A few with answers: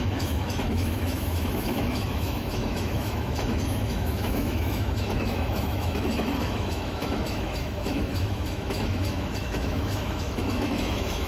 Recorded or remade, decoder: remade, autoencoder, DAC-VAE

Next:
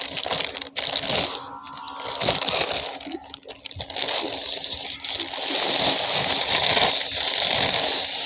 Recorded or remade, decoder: recorded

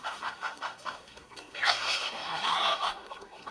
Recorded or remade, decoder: remade, codec, SNAC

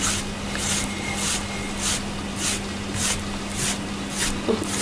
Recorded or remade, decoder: recorded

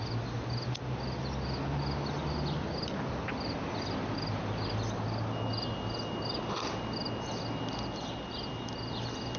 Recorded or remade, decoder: recorded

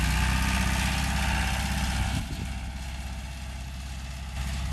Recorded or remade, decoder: recorded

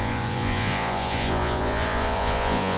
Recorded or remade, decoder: remade, vocoder, Vocos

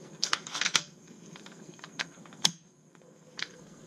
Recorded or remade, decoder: remade, codec, SNAC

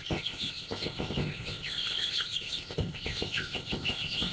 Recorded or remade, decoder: remade, codec, ZipCodec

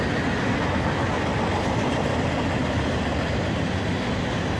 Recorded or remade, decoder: recorded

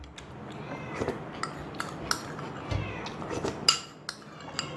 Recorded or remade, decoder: recorded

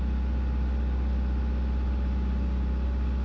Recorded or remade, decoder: recorded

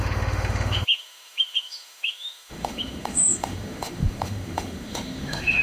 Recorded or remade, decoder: remade, autoencoder, DAC-VAE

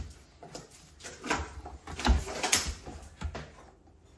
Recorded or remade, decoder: recorded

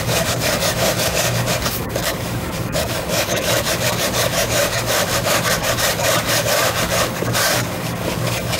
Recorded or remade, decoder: remade, codec, DAC